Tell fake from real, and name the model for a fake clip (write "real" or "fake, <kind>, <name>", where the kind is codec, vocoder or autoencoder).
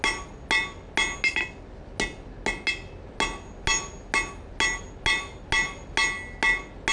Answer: real